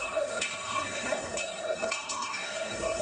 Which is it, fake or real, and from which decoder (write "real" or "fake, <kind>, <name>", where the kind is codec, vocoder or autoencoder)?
fake, codec, SNAC